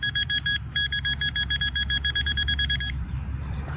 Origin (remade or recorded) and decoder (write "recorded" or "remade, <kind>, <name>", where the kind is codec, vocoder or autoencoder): remade, vocoder, BigVGAN v2